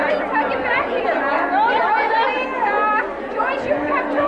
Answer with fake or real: real